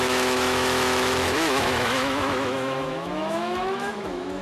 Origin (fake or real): fake